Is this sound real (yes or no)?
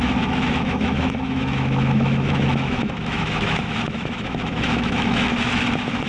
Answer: no